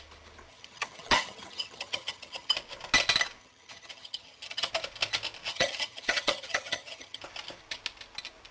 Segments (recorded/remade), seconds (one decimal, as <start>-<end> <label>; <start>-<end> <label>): 0.0-0.5 recorded; 0.5-2.5 remade; 2.5-3.4 recorded; 3.4-4.7 remade; 4.7-5.5 recorded; 5.5-7.2 remade; 7.2-8.5 recorded